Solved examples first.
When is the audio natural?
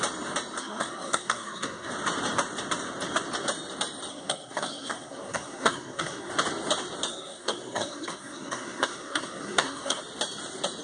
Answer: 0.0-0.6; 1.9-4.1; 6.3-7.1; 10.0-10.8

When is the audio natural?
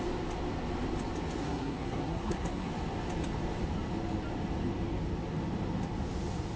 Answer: 0.0-1.4; 2.7-6.6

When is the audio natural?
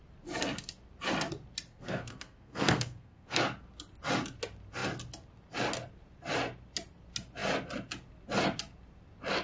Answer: 0.0-1.7; 3.4-9.4